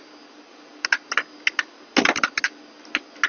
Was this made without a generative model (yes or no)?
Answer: yes